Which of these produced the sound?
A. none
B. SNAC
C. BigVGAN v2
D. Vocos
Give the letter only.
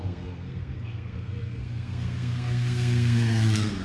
B